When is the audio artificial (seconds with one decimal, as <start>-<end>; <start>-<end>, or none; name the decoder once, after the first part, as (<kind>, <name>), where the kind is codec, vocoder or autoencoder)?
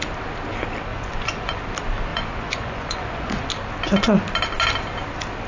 0.9-1.6 (vocoder, Vocos); 2.1-3.5